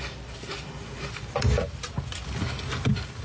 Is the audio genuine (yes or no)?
yes